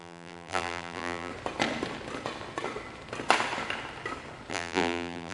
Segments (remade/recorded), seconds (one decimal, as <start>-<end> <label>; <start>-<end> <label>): 0.0-1.3 remade; 1.3-4.5 recorded; 4.5-5.3 remade